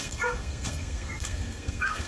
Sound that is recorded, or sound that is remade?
remade